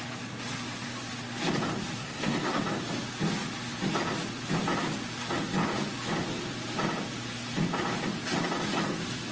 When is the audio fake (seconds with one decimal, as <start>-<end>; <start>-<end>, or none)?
2.0-2.6